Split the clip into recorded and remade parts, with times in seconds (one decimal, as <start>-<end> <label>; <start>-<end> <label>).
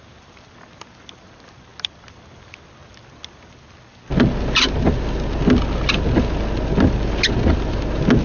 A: 0.0-8.2 recorded